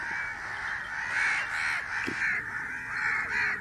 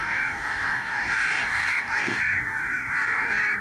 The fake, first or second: second